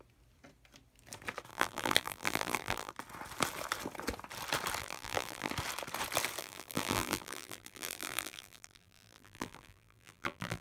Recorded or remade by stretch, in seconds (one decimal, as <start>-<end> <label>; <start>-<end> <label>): 0.0-1.5 recorded; 1.5-2.9 remade; 2.9-4.8 recorded; 4.8-5.5 remade; 5.5-6.4 recorded; 6.4-10.6 remade